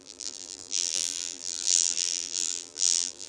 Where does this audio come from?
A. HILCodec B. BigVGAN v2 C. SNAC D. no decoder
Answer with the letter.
B